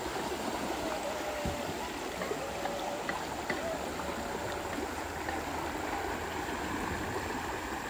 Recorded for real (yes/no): yes